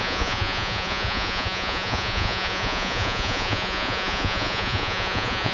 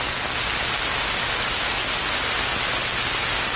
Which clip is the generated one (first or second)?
first